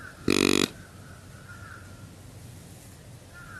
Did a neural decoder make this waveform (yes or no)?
no